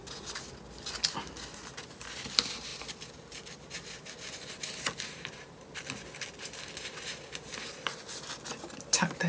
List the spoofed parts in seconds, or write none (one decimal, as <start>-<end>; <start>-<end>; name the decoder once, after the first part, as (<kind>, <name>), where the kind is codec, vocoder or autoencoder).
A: none